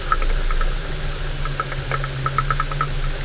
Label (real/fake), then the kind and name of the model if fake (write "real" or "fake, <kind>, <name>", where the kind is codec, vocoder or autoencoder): real